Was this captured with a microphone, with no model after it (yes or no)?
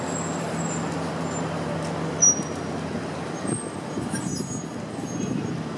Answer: yes